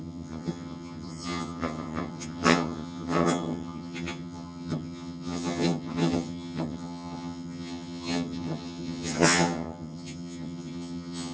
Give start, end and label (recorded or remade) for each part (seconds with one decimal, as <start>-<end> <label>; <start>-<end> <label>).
0.0-11.3 remade